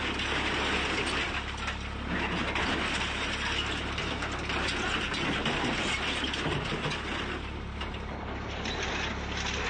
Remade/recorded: recorded